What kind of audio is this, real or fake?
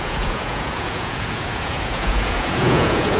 fake